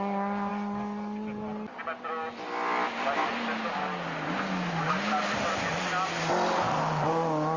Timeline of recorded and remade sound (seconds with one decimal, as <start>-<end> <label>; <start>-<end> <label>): 0.0-7.6 recorded